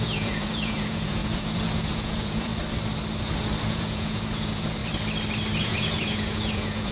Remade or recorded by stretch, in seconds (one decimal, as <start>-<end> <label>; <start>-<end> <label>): 0.0-2.5 remade; 2.5-3.7 recorded; 3.7-4.8 remade; 4.8-5.6 recorded; 5.6-6.9 remade